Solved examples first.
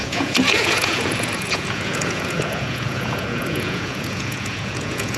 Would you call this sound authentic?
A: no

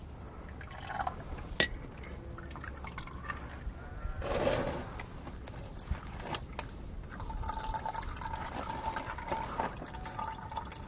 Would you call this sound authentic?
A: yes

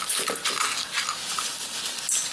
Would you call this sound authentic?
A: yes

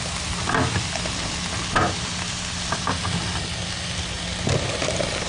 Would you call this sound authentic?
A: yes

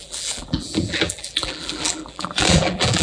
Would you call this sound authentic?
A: no